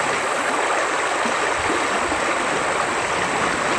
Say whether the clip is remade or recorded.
recorded